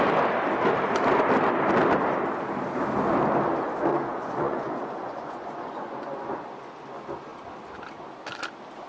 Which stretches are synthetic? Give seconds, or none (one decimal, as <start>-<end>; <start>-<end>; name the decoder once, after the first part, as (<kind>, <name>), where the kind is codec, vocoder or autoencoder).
3.9-6.3 (vocoder, Vocos)